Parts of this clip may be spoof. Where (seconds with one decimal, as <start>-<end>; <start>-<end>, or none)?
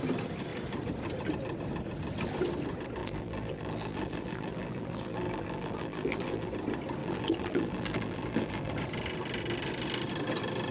3.0-6.5; 7.0-8.7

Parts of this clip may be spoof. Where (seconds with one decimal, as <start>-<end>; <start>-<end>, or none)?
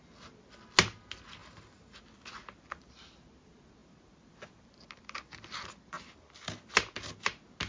1.4-2.0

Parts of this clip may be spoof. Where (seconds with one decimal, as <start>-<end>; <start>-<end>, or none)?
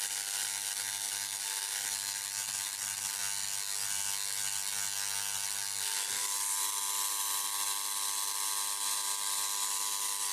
0.0-3.2; 6.2-10.3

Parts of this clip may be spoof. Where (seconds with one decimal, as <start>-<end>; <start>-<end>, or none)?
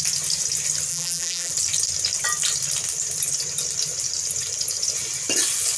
0.9-1.5